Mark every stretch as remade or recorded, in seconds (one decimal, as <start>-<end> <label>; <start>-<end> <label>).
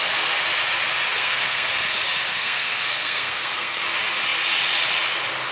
0.0-1.2 recorded; 1.2-1.7 remade; 1.7-2.3 recorded; 2.3-3.8 remade; 3.8-5.5 recorded